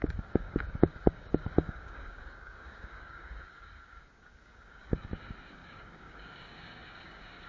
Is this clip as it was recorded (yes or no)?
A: no